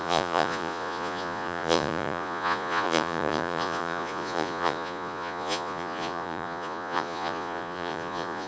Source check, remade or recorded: remade